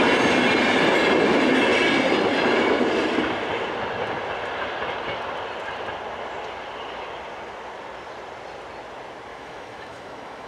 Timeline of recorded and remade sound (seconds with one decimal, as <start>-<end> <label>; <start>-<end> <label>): 0.0-9.3 recorded; 9.3-10.5 remade